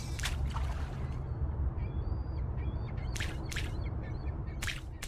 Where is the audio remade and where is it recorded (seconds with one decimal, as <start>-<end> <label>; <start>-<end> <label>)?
0.0-5.1 remade

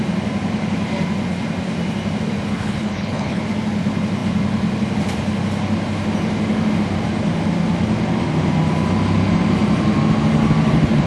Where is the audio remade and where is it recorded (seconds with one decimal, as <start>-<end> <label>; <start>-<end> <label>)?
0.0-2.5 recorded; 2.5-3.4 remade; 3.4-11.1 recorded

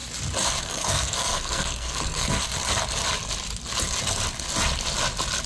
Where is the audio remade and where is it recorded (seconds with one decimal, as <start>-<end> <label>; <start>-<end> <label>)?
0.0-0.6 recorded; 0.6-2.4 remade; 2.4-5.5 recorded

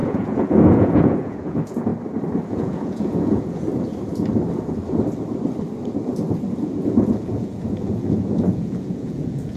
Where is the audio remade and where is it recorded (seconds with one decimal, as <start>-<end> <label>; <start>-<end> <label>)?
0.0-1.9 remade; 1.9-2.5 recorded; 2.5-3.7 remade; 3.7-6.6 recorded; 6.6-9.6 remade

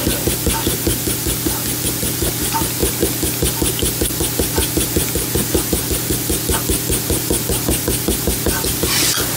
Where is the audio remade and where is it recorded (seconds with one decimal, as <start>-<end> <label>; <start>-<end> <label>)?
0.0-9.4 recorded